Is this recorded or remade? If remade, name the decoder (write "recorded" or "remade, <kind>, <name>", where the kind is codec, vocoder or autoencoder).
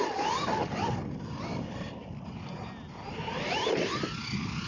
recorded